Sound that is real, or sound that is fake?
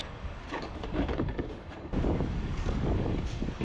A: fake